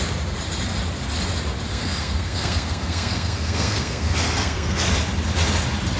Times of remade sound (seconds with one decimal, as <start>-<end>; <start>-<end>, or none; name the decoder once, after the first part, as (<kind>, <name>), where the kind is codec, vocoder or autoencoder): 1.7-4.9 (codec, SNAC)